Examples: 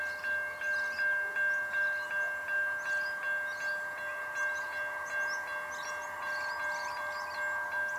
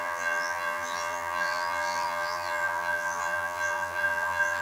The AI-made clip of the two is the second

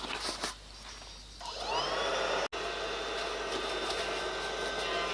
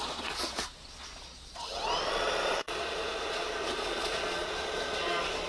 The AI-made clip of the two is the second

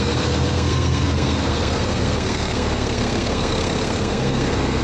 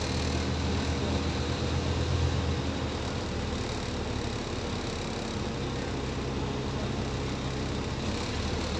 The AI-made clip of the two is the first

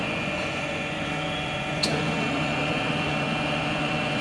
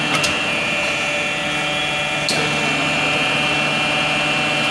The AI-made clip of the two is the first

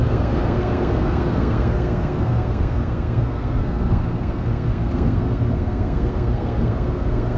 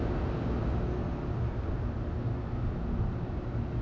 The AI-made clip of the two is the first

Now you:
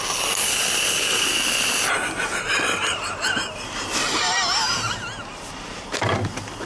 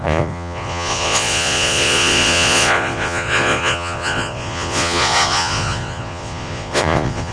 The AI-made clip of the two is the second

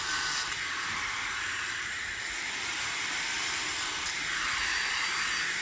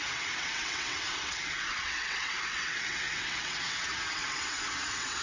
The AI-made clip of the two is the second